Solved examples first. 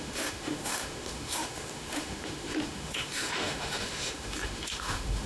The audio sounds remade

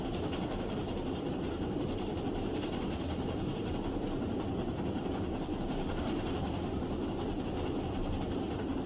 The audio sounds recorded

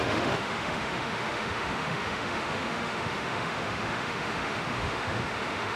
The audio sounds remade